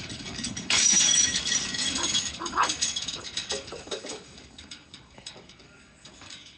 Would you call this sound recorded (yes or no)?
no